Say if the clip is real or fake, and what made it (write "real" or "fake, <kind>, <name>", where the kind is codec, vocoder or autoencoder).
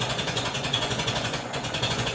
fake, vocoder, Vocos